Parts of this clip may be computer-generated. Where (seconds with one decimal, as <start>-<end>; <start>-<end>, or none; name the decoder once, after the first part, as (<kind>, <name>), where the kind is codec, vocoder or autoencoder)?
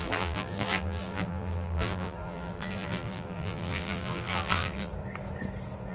0.0-4.9 (vocoder, BigVGAN v2)